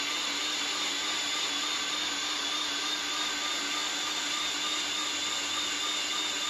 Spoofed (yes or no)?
no